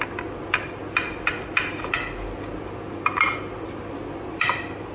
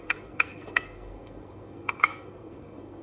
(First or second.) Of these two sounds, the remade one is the second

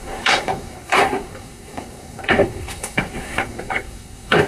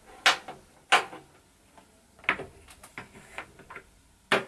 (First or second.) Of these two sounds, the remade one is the first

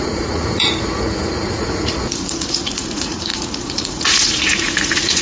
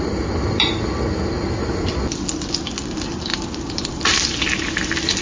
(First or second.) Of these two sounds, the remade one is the first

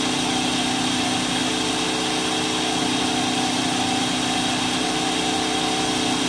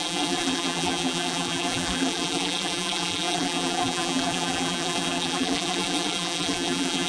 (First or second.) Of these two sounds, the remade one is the second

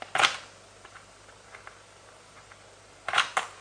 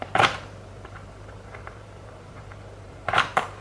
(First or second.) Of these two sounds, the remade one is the second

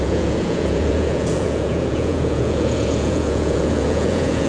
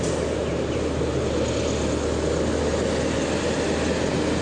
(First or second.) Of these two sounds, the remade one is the first